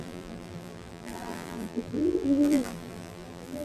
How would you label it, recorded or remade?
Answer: remade